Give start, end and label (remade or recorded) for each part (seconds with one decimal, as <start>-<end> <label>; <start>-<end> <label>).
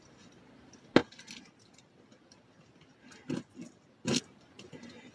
0.0-5.1 recorded